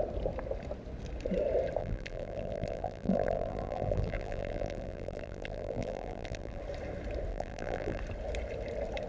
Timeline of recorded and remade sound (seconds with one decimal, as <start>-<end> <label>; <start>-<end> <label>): 0.0-1.8 recorded; 1.8-6.6 remade; 6.6-7.3 recorded; 7.3-8.0 remade; 8.0-9.1 recorded